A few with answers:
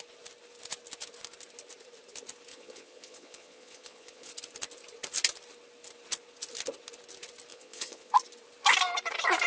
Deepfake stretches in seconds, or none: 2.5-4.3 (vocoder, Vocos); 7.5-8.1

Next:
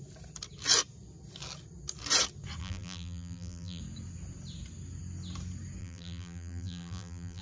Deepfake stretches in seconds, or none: 2.6-3.8 (vocoder, BigVGAN v2); 5.8-7.4

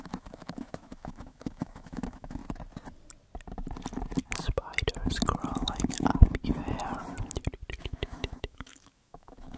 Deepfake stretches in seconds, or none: 0.0-2.4 (autoencoder, DAC-VAE); 5.5-6.1; 7.8-9.6

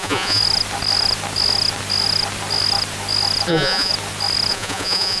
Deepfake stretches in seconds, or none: 0.0-0.4 (vocoder, Vocos); 3.5-3.9; 4.5-5.2